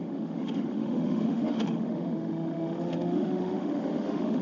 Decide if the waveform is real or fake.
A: fake